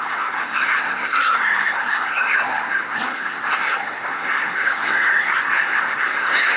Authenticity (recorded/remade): remade